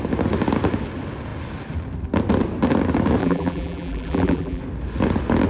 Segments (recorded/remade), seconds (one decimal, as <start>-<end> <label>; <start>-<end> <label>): 0.0-3.2 recorded; 3.2-4.6 remade; 4.6-5.5 recorded